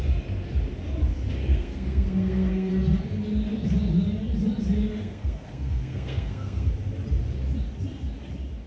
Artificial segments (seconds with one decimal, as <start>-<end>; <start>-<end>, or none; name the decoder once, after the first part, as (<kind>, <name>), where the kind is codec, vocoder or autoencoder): 1.5-2.7 (codec, SNAC); 4.9-6.7